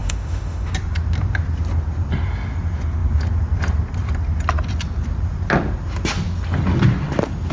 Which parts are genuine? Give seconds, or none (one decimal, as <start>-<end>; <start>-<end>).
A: 0.7-7.5